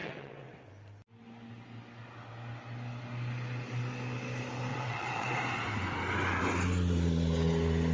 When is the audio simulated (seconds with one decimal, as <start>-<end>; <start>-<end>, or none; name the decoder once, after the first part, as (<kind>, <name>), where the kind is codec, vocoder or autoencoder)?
0.0-0.7 (vocoder, WaveNeXt); 4.7-5.4